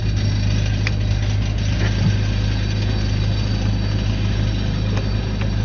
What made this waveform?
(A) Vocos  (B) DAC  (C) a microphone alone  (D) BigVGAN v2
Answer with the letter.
C